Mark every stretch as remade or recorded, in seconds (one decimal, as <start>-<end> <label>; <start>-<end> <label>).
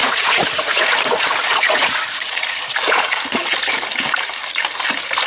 0.0-3.2 remade; 3.2-5.3 recorded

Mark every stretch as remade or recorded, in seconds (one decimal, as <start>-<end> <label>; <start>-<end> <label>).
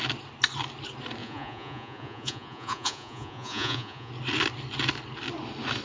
0.0-1.2 recorded; 1.2-4.1 remade; 4.1-5.8 recorded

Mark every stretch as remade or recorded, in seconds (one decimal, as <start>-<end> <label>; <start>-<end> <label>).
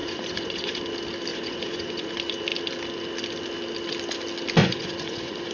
0.0-0.8 remade; 0.8-1.3 recorded; 1.3-2.1 remade; 2.1-4.6 recorded; 4.6-5.5 remade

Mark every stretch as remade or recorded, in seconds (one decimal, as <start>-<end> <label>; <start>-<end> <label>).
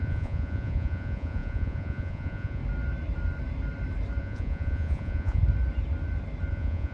0.0-2.6 remade; 2.6-4.2 recorded; 4.2-5.4 remade; 5.4-6.5 recorded; 6.5-6.9 remade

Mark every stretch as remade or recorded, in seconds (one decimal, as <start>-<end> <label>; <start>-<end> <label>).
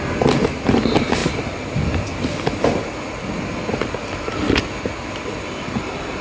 0.0-6.2 recorded